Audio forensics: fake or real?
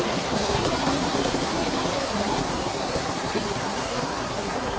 fake